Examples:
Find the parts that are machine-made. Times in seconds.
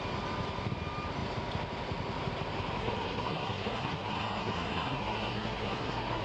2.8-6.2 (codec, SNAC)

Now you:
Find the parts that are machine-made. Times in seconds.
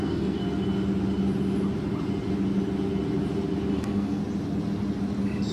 0.0-0.4 (codec, SNAC); 3.7-4.2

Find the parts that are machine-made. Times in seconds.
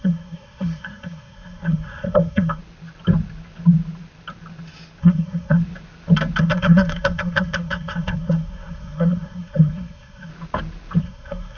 0.0-2.6 (codec, SNAC); 5.0-5.6; 6.4-10.3; 11.0-11.6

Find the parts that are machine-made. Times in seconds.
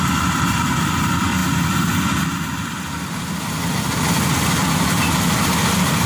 none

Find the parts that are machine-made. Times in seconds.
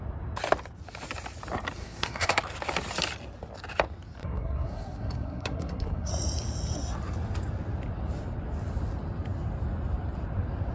1.8-2.4 (codec, SNAC); 4.2-6.1